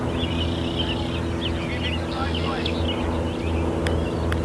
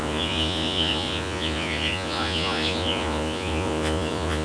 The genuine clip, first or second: first